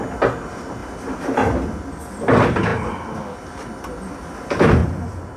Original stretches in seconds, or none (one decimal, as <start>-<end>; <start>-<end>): 0.0-4.8